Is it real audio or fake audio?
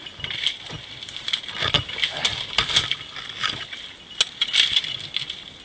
real